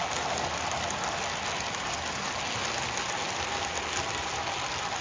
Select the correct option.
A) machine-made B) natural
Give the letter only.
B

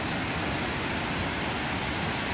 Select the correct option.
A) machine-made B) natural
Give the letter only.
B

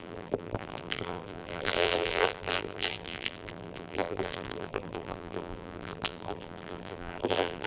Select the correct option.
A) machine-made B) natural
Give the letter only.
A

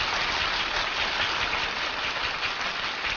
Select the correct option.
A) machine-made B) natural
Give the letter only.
B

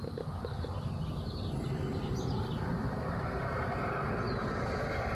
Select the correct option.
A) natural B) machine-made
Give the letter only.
A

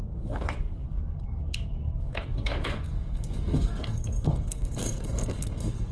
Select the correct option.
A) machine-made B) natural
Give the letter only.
A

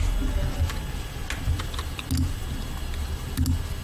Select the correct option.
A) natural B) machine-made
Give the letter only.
A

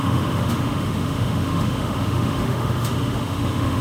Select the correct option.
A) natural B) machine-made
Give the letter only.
B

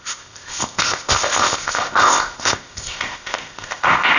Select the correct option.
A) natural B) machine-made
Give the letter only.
B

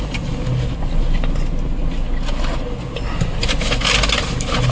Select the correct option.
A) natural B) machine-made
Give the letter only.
A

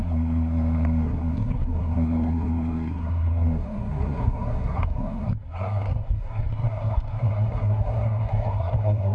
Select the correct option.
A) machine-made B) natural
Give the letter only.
A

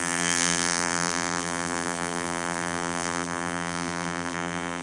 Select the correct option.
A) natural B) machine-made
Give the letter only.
B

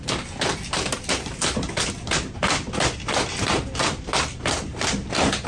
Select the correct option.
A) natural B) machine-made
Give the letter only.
A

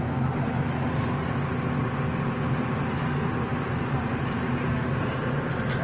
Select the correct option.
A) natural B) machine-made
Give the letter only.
A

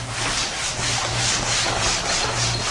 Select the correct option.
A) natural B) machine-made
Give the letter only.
A